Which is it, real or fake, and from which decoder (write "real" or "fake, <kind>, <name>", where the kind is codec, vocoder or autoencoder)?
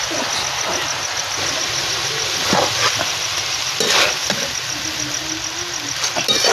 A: real